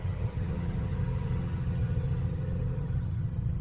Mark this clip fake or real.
fake